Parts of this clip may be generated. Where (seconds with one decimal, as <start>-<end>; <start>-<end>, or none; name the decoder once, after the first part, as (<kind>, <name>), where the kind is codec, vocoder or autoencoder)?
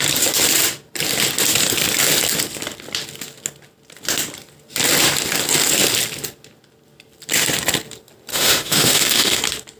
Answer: 8.3-9.4 (autoencoder, DAC-VAE)